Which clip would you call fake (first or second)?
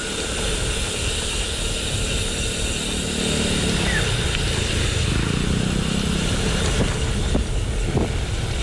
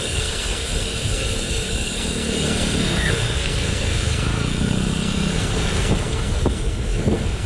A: second